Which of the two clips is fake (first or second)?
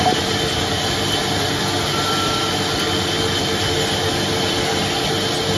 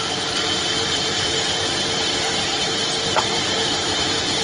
second